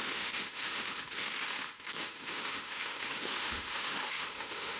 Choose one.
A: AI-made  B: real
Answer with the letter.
A